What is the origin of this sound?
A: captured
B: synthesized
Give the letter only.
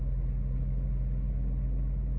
A